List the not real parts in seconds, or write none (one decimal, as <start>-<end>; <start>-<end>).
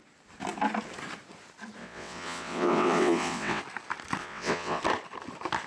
1.8-3.6; 4.2-4.8